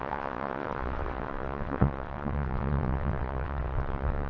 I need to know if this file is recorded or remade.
remade